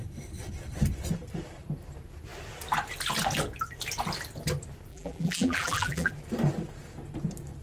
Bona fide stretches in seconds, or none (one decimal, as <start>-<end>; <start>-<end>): 0.0-4.9; 6.1-7.6